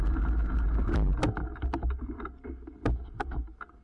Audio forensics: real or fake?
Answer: real